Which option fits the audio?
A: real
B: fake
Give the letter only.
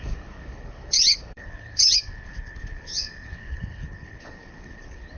B